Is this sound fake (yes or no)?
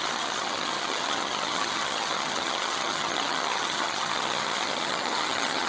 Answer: yes